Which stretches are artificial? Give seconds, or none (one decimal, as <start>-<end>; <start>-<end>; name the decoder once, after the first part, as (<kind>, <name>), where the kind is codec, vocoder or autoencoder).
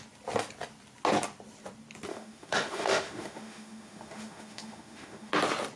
2.1-5.3 (autoencoder, DAC-VAE)